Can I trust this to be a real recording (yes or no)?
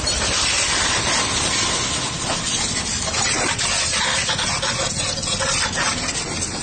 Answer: yes